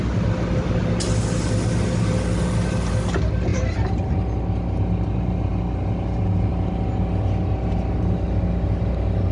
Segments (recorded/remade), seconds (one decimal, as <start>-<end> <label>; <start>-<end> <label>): 0.0-3.5 recorded; 3.5-4.1 remade; 4.1-9.3 recorded